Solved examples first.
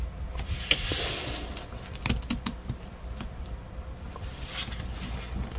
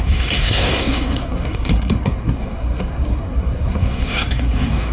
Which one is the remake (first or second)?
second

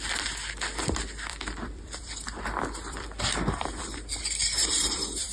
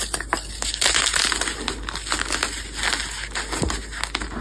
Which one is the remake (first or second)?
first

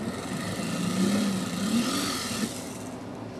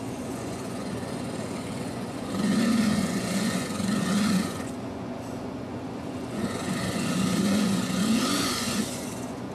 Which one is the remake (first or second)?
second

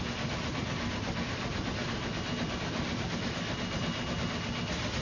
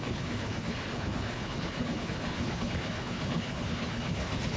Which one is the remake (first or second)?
second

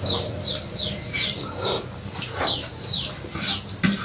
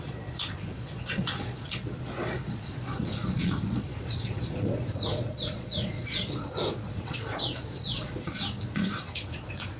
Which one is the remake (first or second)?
second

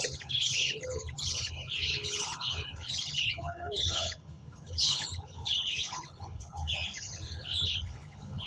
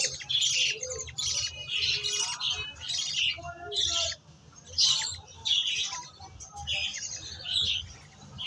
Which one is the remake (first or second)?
first